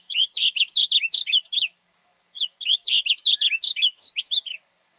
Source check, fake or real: fake